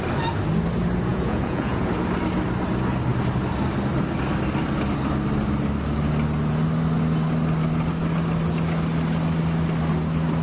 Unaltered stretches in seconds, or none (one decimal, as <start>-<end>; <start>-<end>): 0.0-1.1; 1.9-10.4